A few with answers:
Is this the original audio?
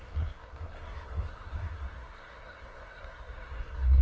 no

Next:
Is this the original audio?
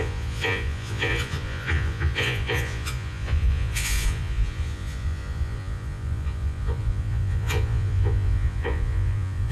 no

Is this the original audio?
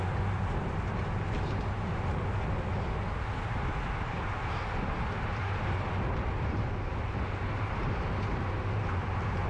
yes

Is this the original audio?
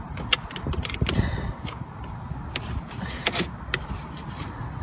yes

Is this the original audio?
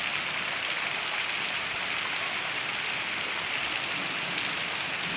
yes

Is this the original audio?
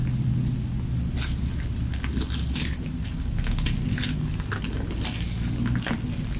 yes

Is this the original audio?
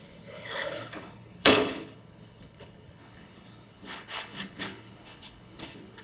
no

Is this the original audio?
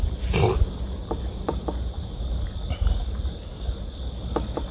yes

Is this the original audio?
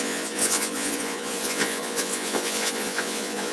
no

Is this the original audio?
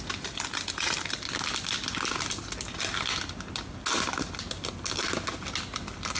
yes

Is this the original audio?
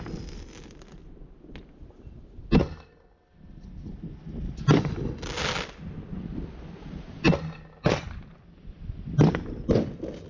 yes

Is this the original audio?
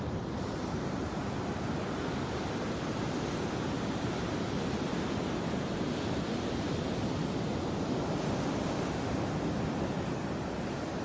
yes